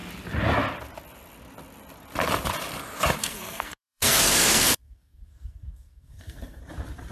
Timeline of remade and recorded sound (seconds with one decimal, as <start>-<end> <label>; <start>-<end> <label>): 0.0-3.2 recorded; 3.2-6.6 remade; 6.6-7.1 recorded